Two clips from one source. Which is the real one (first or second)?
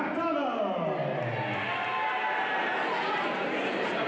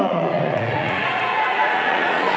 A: first